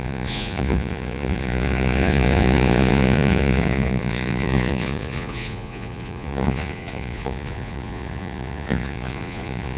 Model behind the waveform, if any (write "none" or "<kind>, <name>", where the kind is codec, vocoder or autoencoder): vocoder, Vocos